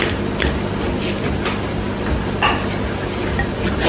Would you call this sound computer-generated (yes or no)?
no